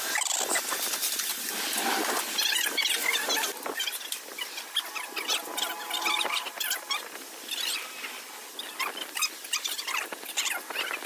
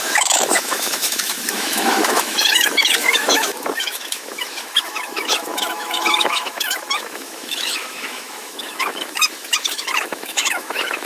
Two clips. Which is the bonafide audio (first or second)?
first